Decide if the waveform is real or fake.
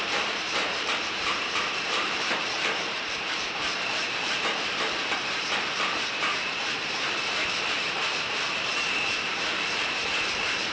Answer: fake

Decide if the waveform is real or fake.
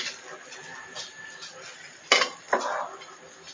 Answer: real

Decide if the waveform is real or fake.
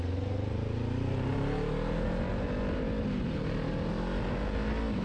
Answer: real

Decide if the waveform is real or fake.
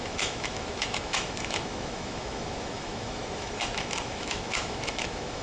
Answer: fake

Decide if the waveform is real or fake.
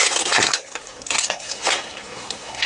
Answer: fake